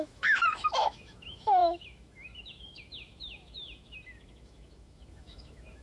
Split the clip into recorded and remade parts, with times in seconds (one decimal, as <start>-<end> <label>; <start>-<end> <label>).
0.0-5.8 remade